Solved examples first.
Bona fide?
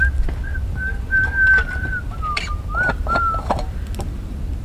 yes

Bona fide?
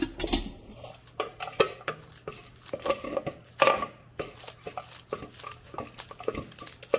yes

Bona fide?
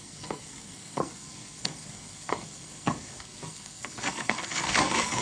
no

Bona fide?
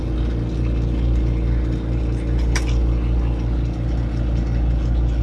yes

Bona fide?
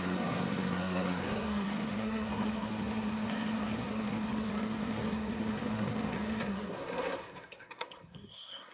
no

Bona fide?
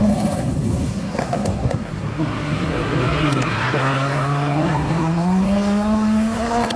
no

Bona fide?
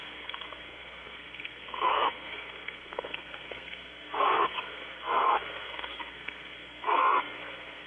no